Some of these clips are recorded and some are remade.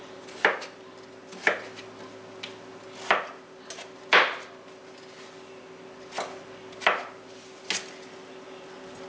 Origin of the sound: recorded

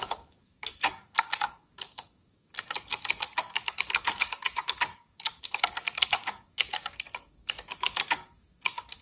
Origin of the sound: remade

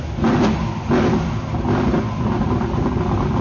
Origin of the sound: recorded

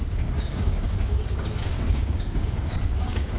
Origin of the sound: remade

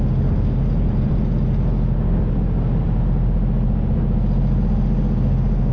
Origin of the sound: recorded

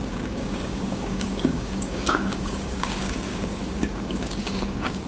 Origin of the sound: remade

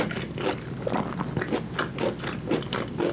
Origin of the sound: recorded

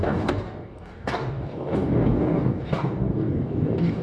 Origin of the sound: remade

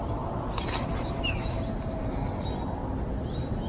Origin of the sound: recorded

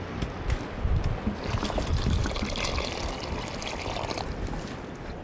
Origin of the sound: recorded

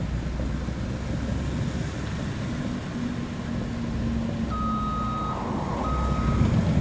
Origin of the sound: recorded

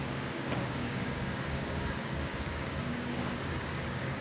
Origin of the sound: remade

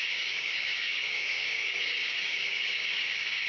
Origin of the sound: remade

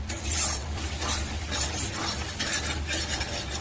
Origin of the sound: recorded